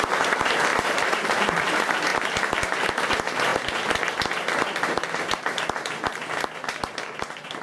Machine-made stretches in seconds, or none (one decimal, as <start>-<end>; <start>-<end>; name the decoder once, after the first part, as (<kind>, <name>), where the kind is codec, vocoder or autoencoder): 0.7-1.6 (vocoder, BigVGAN v2)